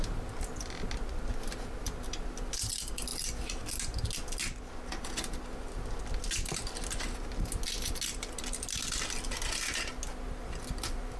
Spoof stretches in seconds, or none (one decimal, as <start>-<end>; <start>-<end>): none